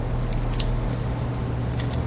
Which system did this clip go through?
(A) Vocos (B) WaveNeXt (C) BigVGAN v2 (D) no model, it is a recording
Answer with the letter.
D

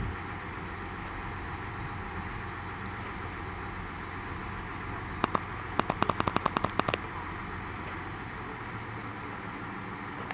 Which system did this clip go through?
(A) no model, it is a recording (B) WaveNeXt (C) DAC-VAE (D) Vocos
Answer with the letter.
A